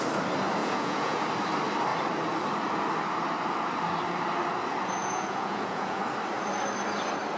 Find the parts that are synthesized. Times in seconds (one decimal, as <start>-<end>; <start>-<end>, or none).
0.6-1.2; 5.0-6.0